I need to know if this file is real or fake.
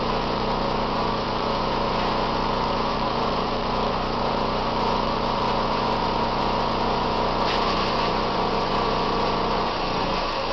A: fake